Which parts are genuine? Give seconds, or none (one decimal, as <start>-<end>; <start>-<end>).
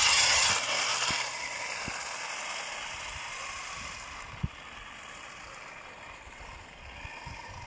0.5-7.7